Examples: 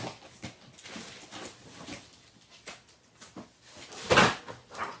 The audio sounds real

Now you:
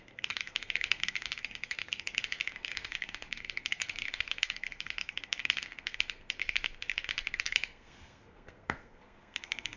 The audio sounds fake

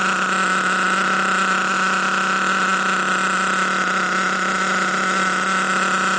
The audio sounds real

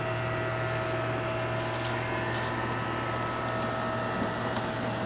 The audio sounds real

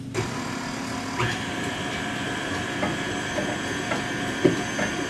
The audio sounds real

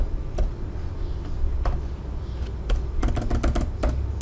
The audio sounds real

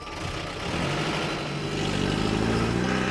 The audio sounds real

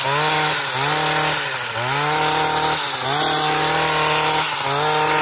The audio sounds real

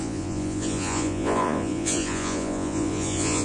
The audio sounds fake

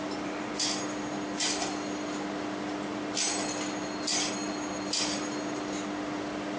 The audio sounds real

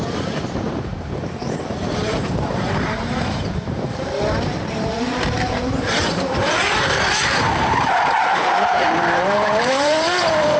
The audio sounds fake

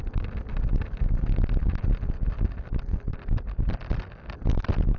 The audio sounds real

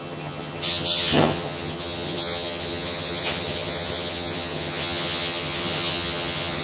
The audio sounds fake